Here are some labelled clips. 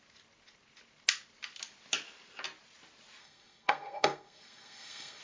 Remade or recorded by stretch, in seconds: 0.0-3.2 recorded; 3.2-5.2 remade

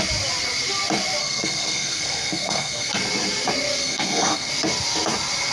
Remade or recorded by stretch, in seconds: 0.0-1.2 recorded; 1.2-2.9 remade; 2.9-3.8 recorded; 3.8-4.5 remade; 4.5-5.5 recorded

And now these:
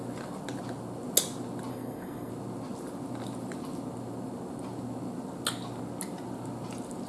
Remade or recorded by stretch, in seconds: 0.0-1.7 recorded; 1.7-2.3 remade; 2.3-7.1 recorded

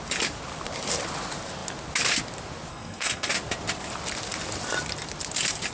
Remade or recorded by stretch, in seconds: 0.0-2.7 recorded; 2.7-3.3 remade; 3.3-5.7 recorded